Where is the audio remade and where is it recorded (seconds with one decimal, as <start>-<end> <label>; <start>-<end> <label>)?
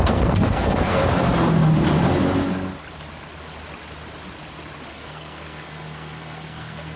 0.0-1.0 remade; 1.0-4.9 recorded; 4.9-7.0 remade